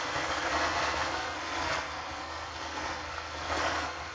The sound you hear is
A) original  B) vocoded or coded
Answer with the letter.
B